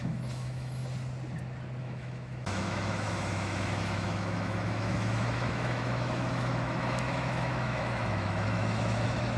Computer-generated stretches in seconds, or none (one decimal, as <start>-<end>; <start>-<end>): 0.0-0.8; 1.8-9.4